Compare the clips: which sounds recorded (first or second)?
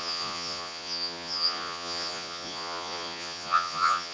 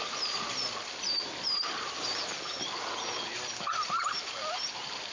second